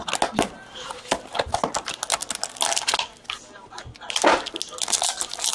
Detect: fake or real real